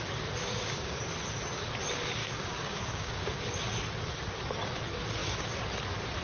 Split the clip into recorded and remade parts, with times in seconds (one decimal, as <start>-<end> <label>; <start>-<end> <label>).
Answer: 0.0-0.4 recorded; 0.4-1.0 remade; 1.0-2.2 recorded; 2.2-3.4 remade; 3.4-6.2 recorded